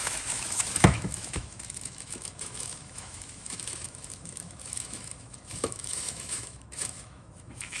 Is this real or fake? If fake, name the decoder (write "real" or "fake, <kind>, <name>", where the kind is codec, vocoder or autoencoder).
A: fake, autoencoder, DAC-VAE